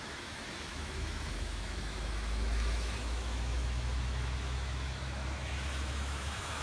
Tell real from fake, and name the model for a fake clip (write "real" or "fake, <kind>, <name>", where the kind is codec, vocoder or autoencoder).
fake, autoencoder, DAC-VAE